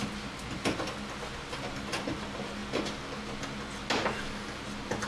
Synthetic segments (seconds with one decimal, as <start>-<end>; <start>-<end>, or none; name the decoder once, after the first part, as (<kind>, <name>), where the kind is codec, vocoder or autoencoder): none